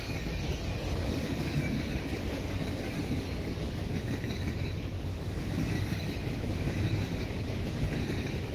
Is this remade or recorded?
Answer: remade